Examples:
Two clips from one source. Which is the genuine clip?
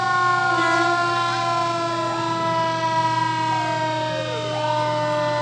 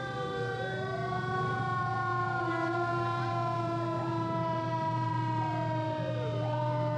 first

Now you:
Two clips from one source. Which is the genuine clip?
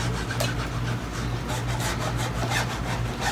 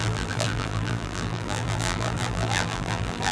first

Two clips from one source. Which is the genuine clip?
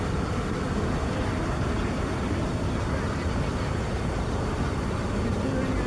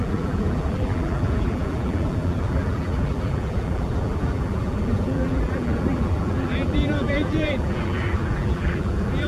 first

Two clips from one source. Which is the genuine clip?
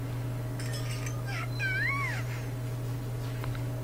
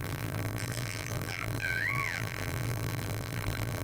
first